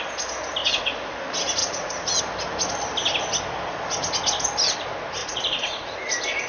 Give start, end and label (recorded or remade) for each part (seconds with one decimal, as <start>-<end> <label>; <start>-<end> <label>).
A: 0.0-0.6 recorded; 0.6-1.2 remade; 1.2-1.6 recorded; 1.6-2.2 remade; 2.2-5.2 recorded; 5.2-6.0 remade; 6.0-6.5 recorded